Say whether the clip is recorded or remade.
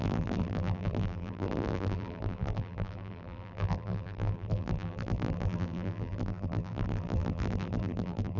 remade